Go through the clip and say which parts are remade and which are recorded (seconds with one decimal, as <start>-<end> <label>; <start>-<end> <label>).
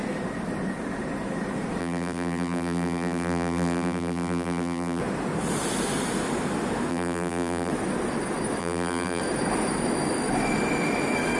0.0-1.8 recorded; 1.8-5.0 remade; 5.0-6.9 recorded; 6.9-7.7 remade; 7.7-8.6 recorded; 8.6-9.2 remade; 9.2-11.4 recorded